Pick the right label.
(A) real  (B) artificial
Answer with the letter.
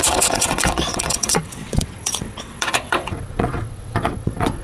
B